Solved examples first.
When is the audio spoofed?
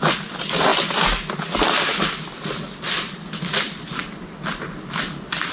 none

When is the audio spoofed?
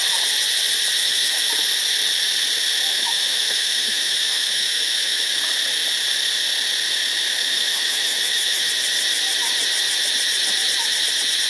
1.0-1.5 (autoencoder, DAC-VAE); 2.9-5.4; 7.3-8.7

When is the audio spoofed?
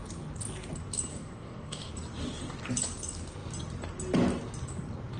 1.1-1.9 (codec, DAC)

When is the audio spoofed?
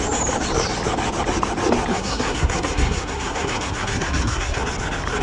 1.9-4.6 (codec, SNAC)